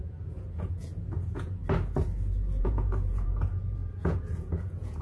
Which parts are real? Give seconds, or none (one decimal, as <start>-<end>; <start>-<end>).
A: 1.6-2.6